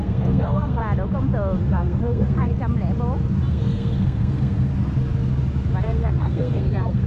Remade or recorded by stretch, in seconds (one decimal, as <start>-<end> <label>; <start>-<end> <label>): 0.0-0.8 remade; 0.8-1.6 recorded; 1.6-2.5 remade; 2.5-3.5 recorded; 3.5-4.7 remade; 4.7-5.8 recorded; 5.8-7.1 remade